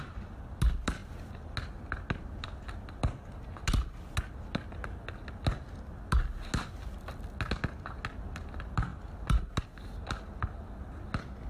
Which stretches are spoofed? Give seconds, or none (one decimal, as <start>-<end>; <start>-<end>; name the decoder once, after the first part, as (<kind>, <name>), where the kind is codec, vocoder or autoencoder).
none

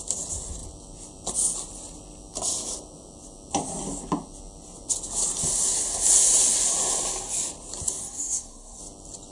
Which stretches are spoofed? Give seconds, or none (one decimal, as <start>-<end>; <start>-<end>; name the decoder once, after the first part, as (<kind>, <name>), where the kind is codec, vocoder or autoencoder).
8.0-8.8 (codec, SNAC)